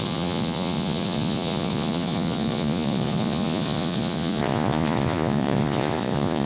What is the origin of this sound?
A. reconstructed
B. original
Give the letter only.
A